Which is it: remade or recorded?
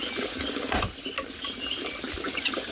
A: recorded